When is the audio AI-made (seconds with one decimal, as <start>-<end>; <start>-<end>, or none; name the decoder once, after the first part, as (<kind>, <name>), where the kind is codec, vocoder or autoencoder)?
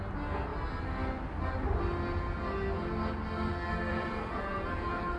3.9-5.2 (vocoder, Vocos)